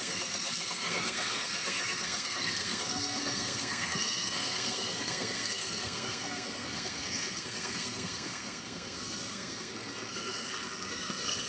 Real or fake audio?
fake